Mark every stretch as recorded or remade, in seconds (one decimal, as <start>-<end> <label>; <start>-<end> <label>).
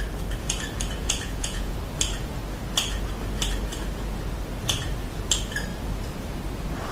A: 0.0-1.0 recorded; 1.0-1.8 remade; 1.8-6.9 recorded